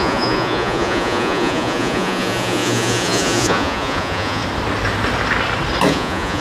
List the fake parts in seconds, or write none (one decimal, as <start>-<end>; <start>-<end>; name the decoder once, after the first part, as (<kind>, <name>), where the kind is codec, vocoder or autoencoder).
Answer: 0.0-4.4 (vocoder, Vocos); 5.9-6.4